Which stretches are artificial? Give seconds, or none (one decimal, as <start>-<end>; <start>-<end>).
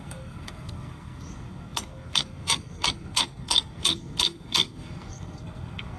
0.0-6.0